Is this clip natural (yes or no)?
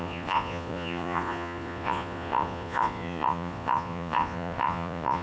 no